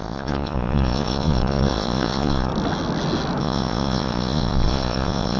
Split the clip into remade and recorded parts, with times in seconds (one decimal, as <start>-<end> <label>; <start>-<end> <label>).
0.0-2.5 remade; 2.5-3.4 recorded; 3.4-5.4 remade